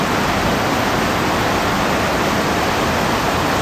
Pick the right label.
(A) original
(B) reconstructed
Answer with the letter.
A